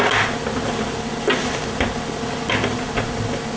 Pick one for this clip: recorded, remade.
recorded